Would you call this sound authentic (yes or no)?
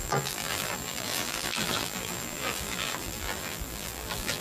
no